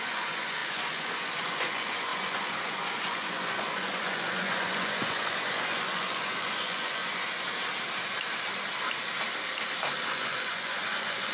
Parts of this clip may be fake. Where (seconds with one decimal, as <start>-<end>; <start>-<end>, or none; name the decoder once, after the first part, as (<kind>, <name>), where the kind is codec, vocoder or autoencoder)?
0.0-7.0 (vocoder, Vocos); 10.1-11.3